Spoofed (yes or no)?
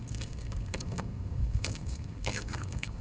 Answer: yes